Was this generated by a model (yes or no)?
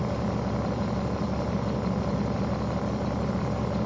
no